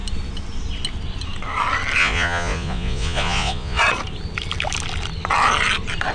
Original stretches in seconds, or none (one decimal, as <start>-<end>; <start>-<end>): 0.0-2.0; 3.8-6.1